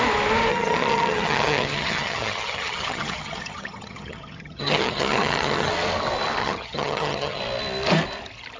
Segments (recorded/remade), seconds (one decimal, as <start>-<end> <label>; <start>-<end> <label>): 0.0-0.5 recorded; 0.5-5.7 remade; 5.7-6.4 recorded; 6.4-7.4 remade; 7.4-8.6 recorded